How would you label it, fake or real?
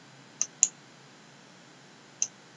real